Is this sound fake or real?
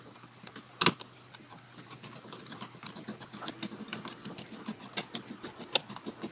real